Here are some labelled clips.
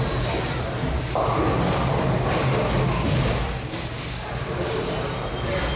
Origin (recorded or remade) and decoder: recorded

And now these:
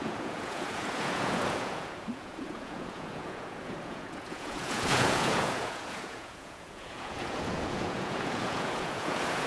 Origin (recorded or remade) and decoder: remade, vocoder, Vocos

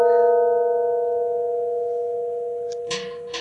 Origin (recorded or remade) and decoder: recorded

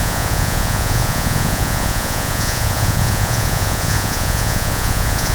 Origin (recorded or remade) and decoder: remade, vocoder, Vocos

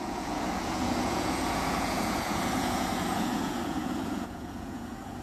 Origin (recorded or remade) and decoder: remade, vocoder, Vocos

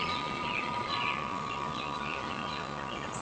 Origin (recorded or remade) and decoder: remade, vocoder, Vocos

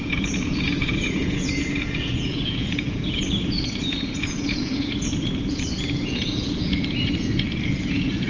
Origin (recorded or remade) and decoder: remade, vocoder, Vocos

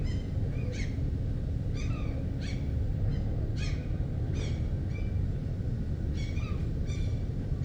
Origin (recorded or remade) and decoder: recorded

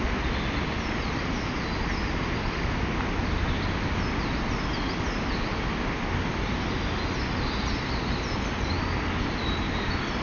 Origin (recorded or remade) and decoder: recorded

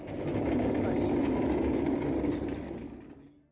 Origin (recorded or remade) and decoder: recorded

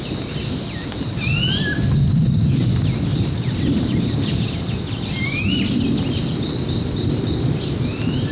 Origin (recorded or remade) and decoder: recorded